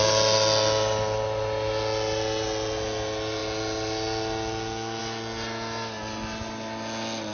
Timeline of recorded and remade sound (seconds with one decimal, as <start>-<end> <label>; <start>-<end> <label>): 0.0-7.3 recorded